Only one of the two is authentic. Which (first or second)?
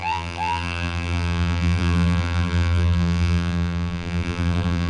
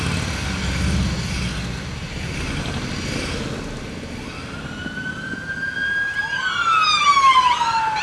second